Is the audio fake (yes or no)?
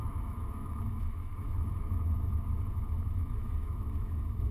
yes